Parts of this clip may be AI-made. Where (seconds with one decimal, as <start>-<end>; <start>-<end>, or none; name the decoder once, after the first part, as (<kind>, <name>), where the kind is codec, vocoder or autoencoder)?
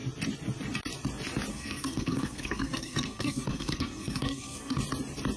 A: 1.5-4.8 (codec, SNAC)